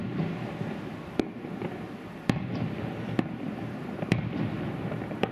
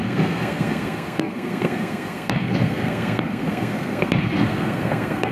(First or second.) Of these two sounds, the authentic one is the first